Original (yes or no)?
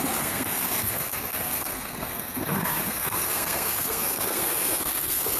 no